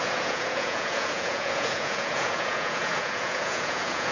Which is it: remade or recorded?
remade